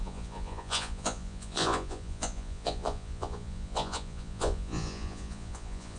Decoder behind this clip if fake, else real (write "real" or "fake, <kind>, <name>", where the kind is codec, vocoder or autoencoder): fake, vocoder, Vocos